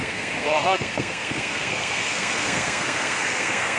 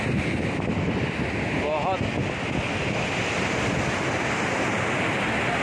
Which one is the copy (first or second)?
first